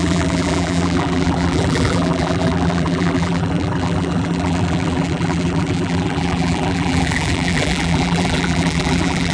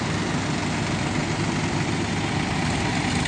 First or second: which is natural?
second